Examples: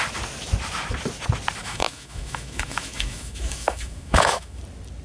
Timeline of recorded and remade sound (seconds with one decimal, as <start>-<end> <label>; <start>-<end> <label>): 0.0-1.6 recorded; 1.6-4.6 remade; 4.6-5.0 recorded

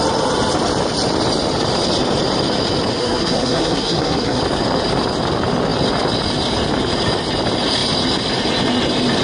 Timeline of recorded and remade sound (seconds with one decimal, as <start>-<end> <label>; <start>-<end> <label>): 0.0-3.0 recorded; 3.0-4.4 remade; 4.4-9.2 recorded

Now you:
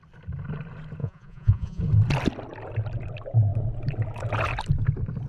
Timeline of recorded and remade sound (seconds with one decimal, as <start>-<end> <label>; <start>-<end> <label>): 0.0-1.0 recorded; 1.0-1.8 remade; 1.8-5.3 recorded

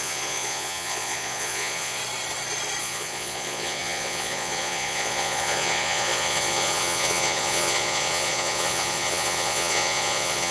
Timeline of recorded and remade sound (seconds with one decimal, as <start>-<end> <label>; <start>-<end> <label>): 0.0-2.0 remade; 2.0-2.8 recorded; 2.8-10.5 remade

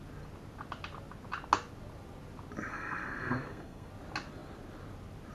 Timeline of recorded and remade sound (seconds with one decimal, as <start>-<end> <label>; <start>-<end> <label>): 0.0-2.7 recorded; 2.7-3.9 remade; 3.9-5.3 recorded

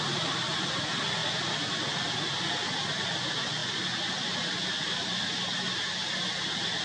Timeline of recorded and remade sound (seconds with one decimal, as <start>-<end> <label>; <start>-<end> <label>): 0.0-6.8 recorded